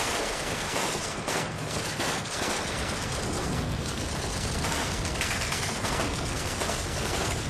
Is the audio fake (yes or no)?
yes